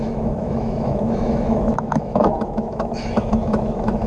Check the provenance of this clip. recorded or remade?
remade